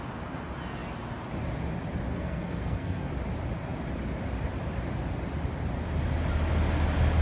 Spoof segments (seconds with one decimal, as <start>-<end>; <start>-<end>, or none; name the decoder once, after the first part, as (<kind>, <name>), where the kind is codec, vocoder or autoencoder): 2.1-3.1 (codec, SNAC)